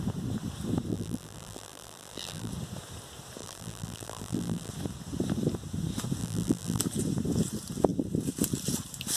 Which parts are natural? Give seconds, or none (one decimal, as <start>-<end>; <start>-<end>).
0.0-0.9; 2.5-3.4; 4.7-6.2; 6.8-9.2